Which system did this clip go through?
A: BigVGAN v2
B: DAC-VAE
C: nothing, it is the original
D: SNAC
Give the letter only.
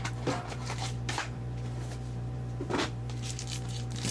A